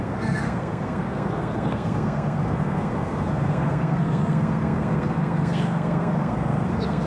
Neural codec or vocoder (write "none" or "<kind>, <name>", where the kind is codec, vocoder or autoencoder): codec, SNAC